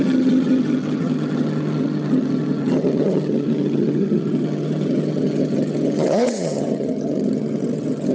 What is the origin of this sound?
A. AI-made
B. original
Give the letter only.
A